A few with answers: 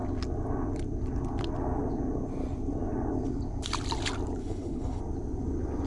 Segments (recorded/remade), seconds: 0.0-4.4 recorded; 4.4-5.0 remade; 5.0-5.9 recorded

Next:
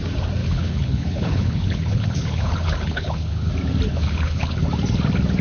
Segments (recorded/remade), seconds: 0.0-0.4 recorded; 0.4-3.5 remade; 3.5-3.9 recorded; 3.9-4.6 remade; 4.6-5.4 recorded

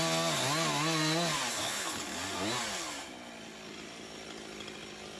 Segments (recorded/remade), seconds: 0.0-1.5 recorded; 1.5-2.0 remade; 2.0-5.2 recorded

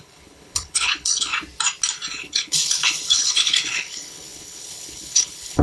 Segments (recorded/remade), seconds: 0.0-1.3 remade; 1.3-2.1 recorded; 2.1-5.6 remade

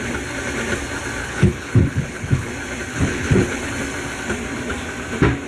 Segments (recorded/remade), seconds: 0.0-1.2 recorded; 1.2-2.5 remade; 2.5-2.9 recorded; 2.9-3.7 remade; 3.7-5.5 recorded

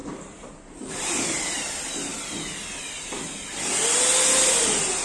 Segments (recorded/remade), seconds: 0.0-5.0 recorded

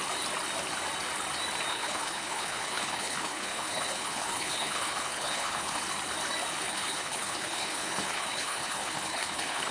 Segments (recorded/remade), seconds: 0.0-1.7 recorded; 1.7-5.8 remade; 5.8-6.6 recorded; 6.6-9.7 remade

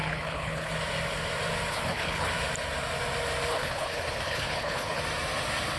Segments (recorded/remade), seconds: 0.0-0.7 remade; 0.7-1.7 recorded; 1.7-2.3 remade; 2.3-3.5 recorded; 3.5-5.0 remade; 5.0-5.8 recorded